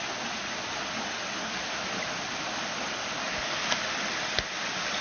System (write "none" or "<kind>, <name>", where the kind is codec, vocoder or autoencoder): none